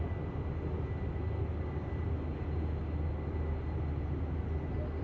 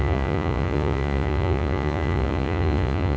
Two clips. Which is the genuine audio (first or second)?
first